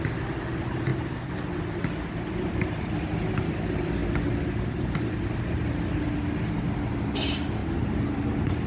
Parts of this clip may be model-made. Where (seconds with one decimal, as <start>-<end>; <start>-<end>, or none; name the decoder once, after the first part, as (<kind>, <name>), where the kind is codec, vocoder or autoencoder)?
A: 0.9-1.4 (vocoder, BigVGAN v2)